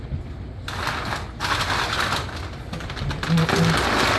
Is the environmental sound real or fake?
real